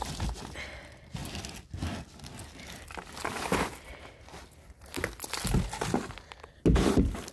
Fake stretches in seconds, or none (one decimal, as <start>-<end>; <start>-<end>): none